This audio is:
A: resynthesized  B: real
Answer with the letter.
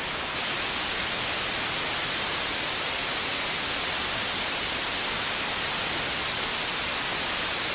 B